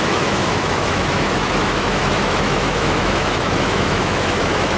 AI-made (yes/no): yes